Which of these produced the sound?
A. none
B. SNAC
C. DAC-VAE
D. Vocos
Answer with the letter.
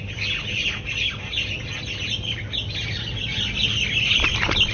A